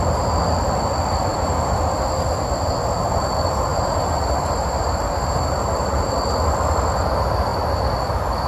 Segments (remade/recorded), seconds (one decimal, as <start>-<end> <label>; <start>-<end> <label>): 0.0-1.3 recorded; 1.3-1.8 remade; 1.8-3.7 recorded; 3.7-6.2 remade; 6.2-8.5 recorded